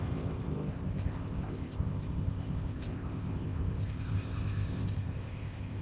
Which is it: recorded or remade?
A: remade